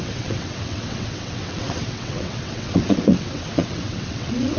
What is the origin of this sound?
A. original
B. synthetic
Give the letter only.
B